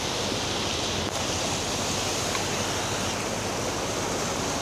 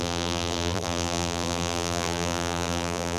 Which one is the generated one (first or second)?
second